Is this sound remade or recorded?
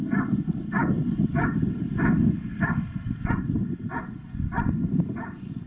recorded